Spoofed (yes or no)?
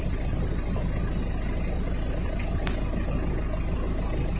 no